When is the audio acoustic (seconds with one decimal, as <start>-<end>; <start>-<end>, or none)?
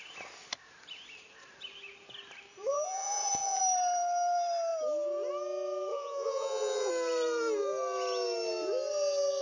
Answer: 0.0-2.7; 3.6-5.9; 6.9-9.4